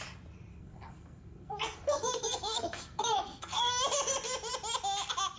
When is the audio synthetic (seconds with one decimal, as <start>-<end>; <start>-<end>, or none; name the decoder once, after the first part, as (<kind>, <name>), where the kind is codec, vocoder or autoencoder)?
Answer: 0.5-3.7 (codec, SNAC)